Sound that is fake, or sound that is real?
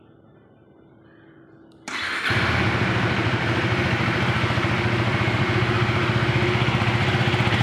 real